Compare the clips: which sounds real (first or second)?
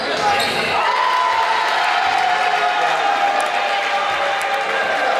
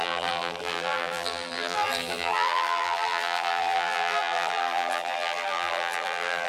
first